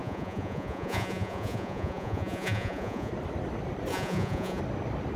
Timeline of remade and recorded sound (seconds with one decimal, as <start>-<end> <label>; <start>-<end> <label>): 0.0-3.1 remade; 3.1-3.9 recorded; 3.9-4.6 remade; 4.6-5.2 recorded